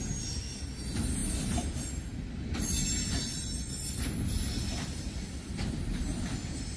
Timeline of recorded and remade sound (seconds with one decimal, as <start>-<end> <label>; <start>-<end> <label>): 0.0-6.8 recorded

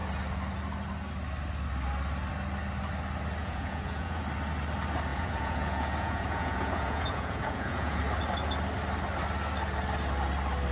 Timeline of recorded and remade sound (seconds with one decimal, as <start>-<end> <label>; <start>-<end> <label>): 0.0-3.4 recorded; 3.4-4.2 remade; 4.2-5.1 recorded; 5.1-8.0 remade; 8.0-10.7 recorded